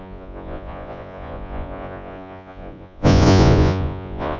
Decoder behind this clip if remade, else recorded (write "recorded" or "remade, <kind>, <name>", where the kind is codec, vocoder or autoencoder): remade, vocoder, Vocos